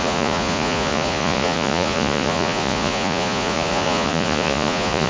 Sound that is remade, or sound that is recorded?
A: remade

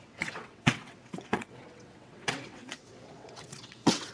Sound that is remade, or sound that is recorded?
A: remade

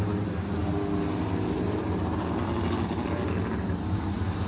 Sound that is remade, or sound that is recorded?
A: recorded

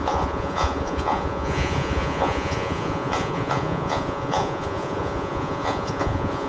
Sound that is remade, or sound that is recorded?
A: remade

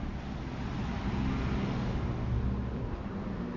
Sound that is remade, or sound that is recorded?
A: recorded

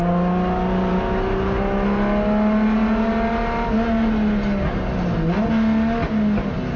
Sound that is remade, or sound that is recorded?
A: recorded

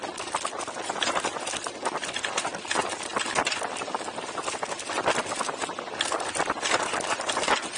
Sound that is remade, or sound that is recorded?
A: recorded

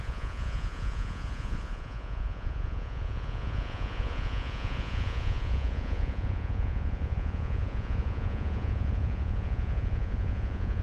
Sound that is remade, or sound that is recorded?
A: remade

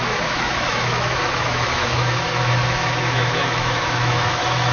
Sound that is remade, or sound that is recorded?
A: remade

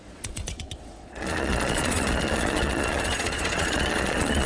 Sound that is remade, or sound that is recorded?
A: remade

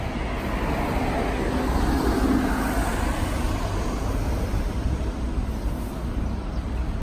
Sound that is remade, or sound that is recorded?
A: recorded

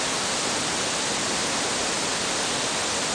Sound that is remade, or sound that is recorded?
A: recorded